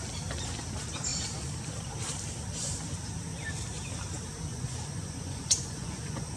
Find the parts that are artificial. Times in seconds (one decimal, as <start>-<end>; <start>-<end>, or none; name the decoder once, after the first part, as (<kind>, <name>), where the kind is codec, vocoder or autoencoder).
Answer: 4.5-6.4 (vocoder, Vocos)